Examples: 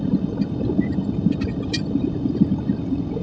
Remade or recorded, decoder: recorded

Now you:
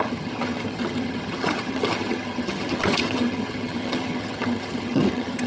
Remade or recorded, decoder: remade, vocoder, HiFi-GAN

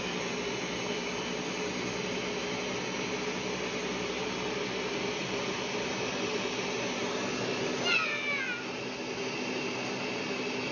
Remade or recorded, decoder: recorded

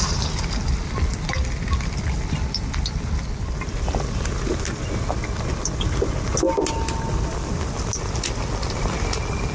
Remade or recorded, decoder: recorded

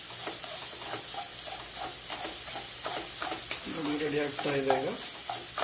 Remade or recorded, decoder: recorded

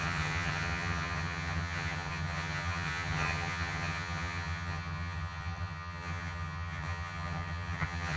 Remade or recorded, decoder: remade, vocoder, HiFi-GAN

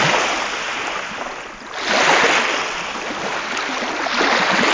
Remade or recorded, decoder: recorded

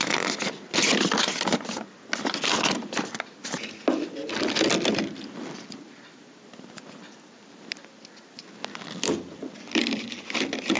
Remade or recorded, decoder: recorded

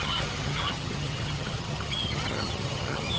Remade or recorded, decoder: remade, vocoder, HiFi-GAN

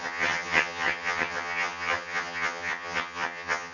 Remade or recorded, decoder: remade, vocoder, HiFi-GAN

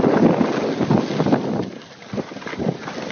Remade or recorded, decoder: recorded